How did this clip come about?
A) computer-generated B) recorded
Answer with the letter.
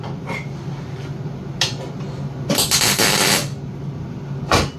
B